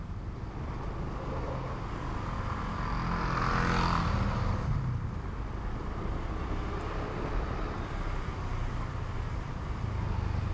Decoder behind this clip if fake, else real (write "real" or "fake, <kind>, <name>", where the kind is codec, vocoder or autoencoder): real